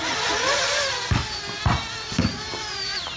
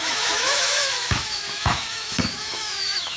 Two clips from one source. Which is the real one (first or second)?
first